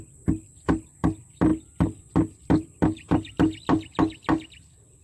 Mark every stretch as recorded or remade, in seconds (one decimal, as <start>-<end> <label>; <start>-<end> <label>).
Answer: 0.0-5.0 remade